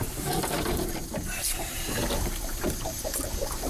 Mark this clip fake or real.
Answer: fake